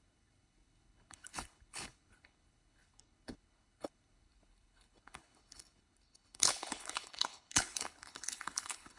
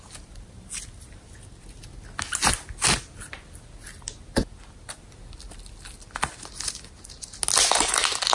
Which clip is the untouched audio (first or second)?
second